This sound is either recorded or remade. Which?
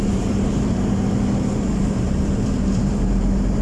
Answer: remade